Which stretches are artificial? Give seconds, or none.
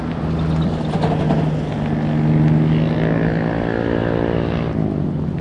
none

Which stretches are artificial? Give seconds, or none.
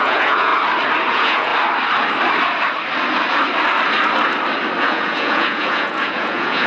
0.0-0.5 (vocoder, Vocos); 1.1-1.5; 4.8-6.7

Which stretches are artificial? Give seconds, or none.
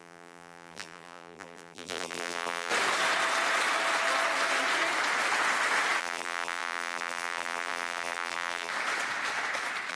0.0-2.7 (vocoder, BigVGAN v2); 6.0-8.7